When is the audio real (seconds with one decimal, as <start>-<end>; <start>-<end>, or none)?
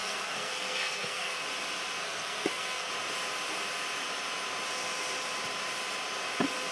1.4-2.0; 2.9-6.7